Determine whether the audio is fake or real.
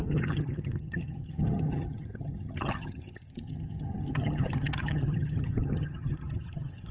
fake